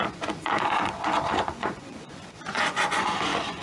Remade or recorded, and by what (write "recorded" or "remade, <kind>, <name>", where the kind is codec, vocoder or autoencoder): remade, vocoder, Vocos